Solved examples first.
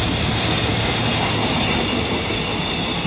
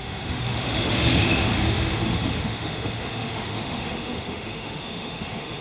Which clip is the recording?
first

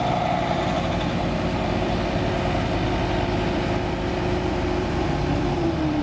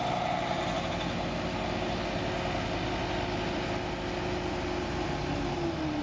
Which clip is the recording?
second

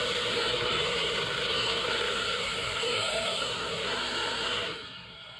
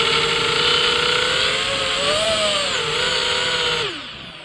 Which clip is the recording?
second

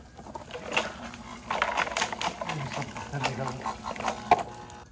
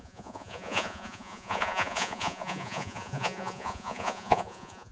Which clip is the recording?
first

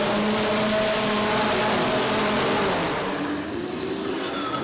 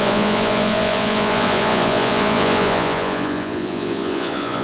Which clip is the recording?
first